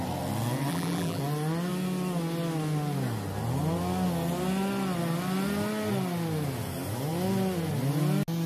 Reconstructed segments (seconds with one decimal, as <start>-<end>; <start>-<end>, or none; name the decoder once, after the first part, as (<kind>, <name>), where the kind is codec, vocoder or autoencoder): 0.7-1.2 (vocoder, BigVGAN v2)